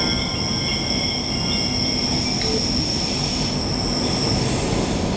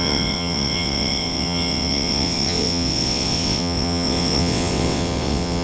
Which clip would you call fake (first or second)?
second